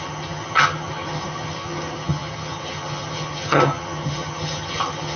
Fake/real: fake